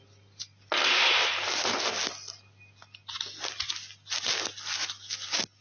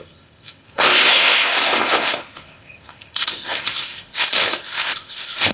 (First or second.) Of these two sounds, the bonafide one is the first